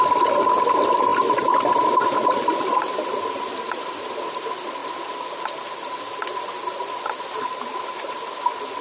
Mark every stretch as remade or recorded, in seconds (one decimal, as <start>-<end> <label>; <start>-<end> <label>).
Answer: 0.0-1.1 recorded; 1.1-4.0 remade; 4.0-8.8 recorded